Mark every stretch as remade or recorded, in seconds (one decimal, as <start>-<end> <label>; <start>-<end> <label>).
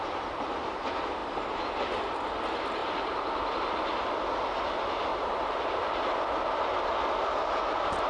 0.0-2.8 recorded; 2.8-3.5 remade; 3.5-5.1 recorded; 5.1-5.6 remade; 5.6-8.1 recorded